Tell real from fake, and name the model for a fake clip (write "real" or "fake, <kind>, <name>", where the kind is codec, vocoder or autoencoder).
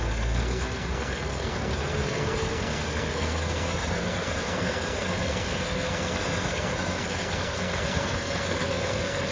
fake, codec, SNAC